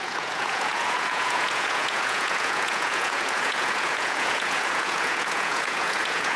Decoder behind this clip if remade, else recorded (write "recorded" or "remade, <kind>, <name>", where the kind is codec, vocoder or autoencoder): remade, vocoder, Vocos